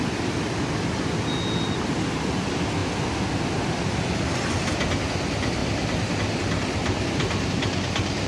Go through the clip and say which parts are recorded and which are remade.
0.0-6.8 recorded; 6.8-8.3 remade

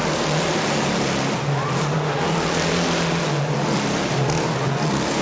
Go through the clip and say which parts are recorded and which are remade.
0.0-5.2 recorded

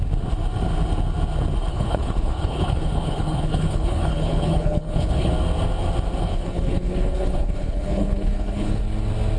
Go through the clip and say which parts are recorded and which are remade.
0.0-1.7 recorded; 1.7-5.3 remade; 5.3-6.2 recorded; 6.2-8.8 remade; 8.8-9.4 recorded

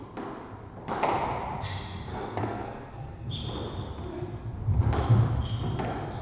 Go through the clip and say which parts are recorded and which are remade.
0.0-2.1 recorded; 2.1-3.3 remade; 3.3-6.2 recorded

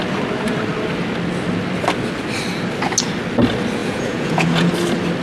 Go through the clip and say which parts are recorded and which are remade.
0.0-3.8 recorded; 3.8-4.7 remade; 4.7-5.2 recorded

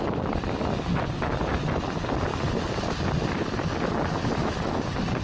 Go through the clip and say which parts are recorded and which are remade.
0.0-5.2 recorded